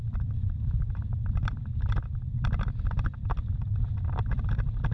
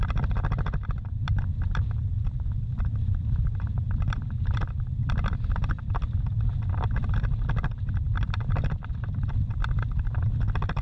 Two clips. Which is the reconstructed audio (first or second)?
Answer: second